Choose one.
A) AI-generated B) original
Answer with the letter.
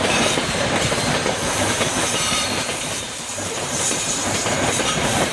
A